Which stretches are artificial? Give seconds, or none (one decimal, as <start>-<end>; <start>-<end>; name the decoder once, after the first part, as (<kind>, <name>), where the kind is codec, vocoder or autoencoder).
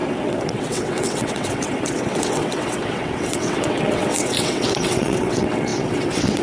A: 0.0-6.4 (vocoder, WaveNeXt)